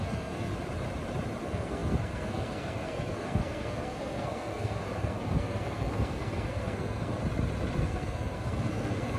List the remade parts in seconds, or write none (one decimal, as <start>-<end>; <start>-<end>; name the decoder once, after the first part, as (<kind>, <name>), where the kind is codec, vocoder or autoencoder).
0.0-0.5 (codec, SNAC); 1.4-7.2; 7.8-9.2